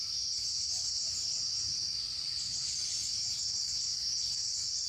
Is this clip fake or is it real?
real